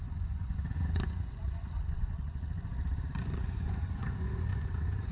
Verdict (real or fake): fake